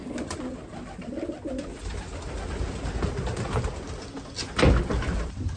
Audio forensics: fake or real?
real